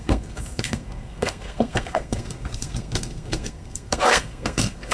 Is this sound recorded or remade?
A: remade